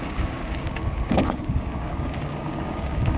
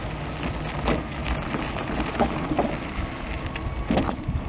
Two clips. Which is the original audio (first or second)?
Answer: second